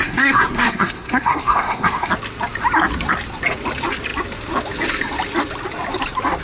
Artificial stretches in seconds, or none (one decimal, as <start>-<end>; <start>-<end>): 0.0-2.1